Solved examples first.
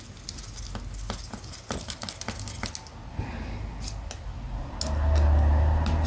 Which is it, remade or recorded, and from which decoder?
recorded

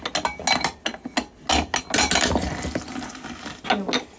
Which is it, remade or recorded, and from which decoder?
recorded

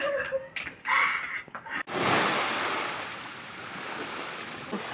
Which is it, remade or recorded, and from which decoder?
recorded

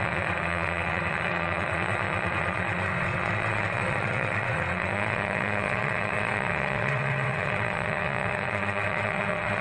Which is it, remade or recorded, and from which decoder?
remade, vocoder, WaveNeXt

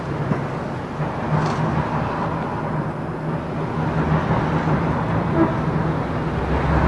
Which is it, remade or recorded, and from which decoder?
recorded